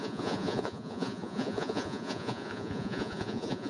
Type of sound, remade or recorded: remade